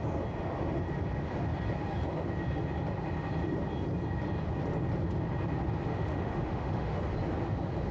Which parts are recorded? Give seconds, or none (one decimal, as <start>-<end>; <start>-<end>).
0.0-5.9; 7.0-7.9